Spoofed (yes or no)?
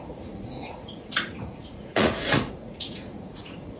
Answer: yes